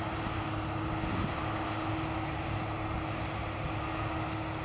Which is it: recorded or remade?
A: recorded